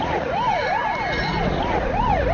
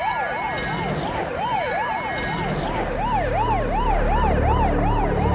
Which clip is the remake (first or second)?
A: first